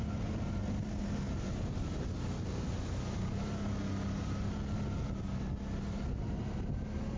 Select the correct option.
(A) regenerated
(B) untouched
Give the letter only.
B